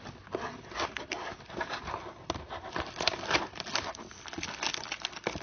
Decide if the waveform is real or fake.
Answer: real